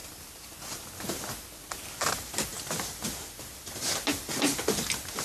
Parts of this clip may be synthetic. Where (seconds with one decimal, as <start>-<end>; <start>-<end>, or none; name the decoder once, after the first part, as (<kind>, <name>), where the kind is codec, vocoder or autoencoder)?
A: none